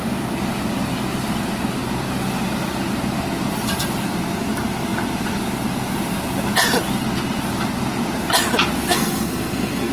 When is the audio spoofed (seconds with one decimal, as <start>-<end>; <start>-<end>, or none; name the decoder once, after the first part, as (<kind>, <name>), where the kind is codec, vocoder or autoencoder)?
8.9-9.9 (codec, SNAC)